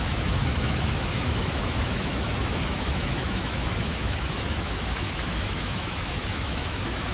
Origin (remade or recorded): remade